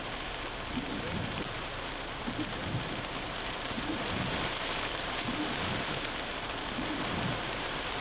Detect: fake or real fake